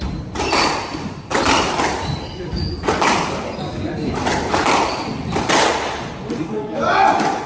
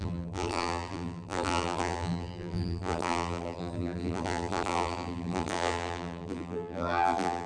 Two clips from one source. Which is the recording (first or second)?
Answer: first